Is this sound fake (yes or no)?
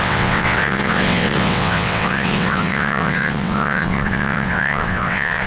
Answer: yes